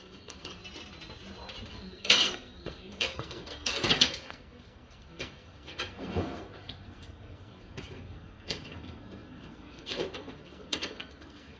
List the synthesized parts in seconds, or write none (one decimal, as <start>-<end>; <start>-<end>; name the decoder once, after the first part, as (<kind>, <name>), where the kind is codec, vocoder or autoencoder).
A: 0.0-0.6 (codec, SNAC); 1.7-11.6